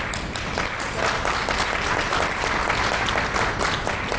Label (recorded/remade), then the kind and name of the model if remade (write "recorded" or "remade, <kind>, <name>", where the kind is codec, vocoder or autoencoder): recorded